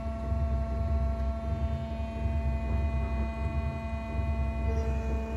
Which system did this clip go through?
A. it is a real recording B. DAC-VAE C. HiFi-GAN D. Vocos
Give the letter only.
A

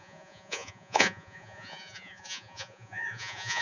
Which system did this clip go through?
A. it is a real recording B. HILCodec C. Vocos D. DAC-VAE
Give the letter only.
C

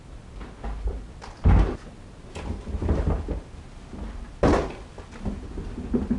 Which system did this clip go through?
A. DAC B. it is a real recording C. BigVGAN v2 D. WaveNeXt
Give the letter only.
B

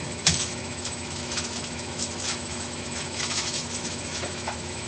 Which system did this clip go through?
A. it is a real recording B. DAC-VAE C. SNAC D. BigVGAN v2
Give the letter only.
B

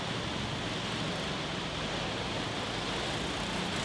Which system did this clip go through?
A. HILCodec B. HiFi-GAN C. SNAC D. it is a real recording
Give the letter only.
D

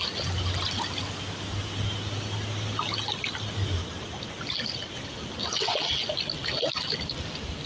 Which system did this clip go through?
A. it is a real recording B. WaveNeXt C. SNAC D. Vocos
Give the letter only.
A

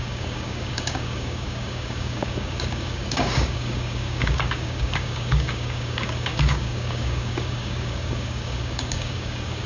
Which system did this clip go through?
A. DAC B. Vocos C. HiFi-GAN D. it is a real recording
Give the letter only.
A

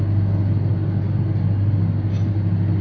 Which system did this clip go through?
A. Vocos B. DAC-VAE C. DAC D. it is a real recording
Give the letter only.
D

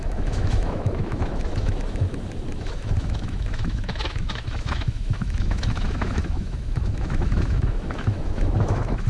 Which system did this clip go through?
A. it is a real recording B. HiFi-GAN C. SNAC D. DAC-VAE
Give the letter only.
D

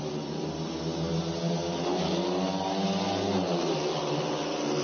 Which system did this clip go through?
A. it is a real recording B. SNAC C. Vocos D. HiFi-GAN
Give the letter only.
A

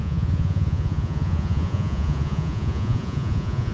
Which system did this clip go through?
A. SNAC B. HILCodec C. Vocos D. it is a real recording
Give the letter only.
C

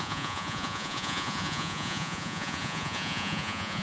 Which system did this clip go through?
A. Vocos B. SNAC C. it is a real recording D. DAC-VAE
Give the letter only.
A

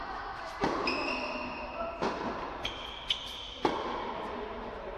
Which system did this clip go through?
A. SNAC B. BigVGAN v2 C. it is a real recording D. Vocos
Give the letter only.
C